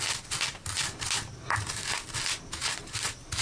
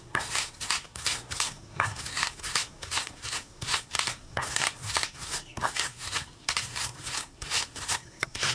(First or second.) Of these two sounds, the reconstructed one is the second